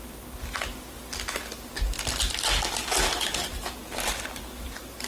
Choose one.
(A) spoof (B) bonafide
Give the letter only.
B